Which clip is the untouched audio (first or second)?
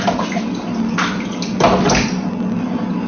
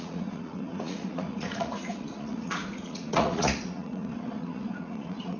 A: first